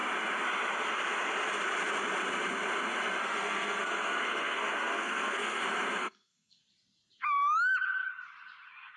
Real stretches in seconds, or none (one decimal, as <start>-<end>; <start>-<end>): 0.0-3.2; 5.6-6.0; 6.6-9.0